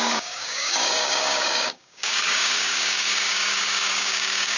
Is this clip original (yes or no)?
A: no